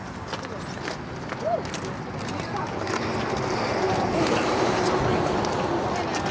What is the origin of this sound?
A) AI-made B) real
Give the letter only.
B